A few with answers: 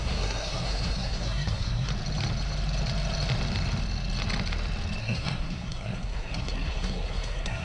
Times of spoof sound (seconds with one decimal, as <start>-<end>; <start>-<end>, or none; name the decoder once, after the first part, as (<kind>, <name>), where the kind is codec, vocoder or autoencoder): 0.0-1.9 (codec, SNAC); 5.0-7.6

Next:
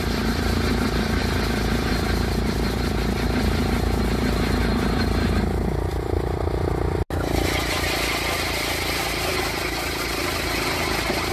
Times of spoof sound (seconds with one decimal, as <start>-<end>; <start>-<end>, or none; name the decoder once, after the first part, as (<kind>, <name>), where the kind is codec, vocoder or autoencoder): none

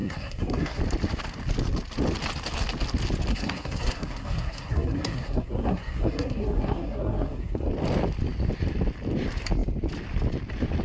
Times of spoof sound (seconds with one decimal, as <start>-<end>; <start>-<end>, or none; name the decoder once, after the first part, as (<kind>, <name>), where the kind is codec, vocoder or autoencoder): 0.0-0.8 (codec, SNAC); 3.3-7.7

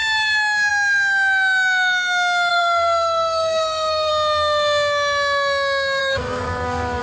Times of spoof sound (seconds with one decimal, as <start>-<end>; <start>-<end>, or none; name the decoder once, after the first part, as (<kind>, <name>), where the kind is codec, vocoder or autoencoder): 2.5-4.1 (codec, SNAC); 6.0-7.0

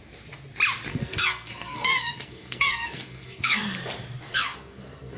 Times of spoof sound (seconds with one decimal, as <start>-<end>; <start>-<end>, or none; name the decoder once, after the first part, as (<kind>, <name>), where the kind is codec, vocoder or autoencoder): 0.9-3.6 (codec, SNAC); 4.3-5.2

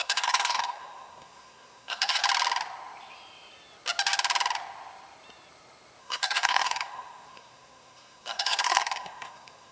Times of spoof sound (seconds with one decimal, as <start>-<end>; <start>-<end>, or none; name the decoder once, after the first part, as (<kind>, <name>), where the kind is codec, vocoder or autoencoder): 0.0-2.2 (codec, SNAC); 6.0-9.7

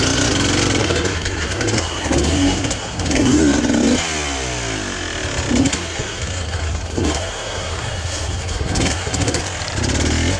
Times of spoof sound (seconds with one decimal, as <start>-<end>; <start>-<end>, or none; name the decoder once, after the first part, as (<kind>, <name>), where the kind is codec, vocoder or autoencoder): 0.8-3.4 (codec, SNAC); 5.6-9.4

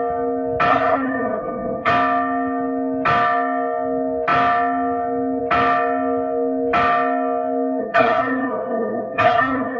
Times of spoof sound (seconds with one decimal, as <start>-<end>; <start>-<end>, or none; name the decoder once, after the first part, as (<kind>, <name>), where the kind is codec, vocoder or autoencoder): 0.7-1.9 (codec, SNAC); 7.8-9.8